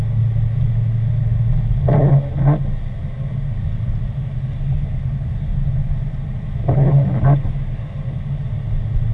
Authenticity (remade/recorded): recorded